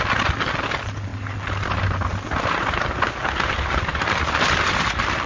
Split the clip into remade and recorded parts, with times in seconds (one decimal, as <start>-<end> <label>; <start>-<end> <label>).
0.0-5.3 recorded